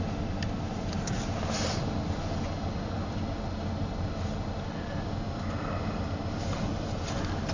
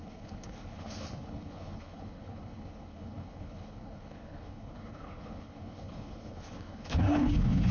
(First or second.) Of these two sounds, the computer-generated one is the second